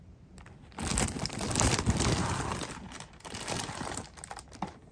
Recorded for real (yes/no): yes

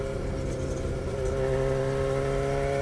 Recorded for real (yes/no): yes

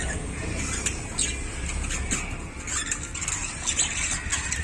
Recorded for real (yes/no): yes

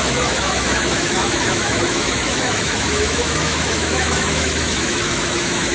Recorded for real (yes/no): no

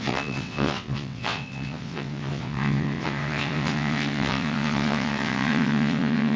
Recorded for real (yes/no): no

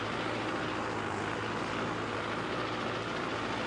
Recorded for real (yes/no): yes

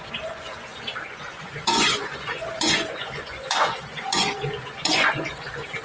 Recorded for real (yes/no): no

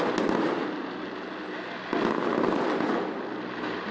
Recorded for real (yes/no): yes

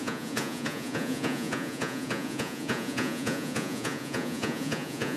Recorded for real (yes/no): no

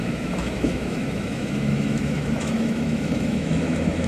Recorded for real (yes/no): no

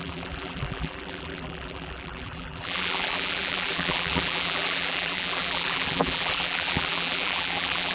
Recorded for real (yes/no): no